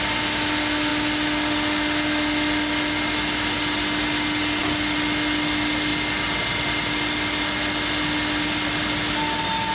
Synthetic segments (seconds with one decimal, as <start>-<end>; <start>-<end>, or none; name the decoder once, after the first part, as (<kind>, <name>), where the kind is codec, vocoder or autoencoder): none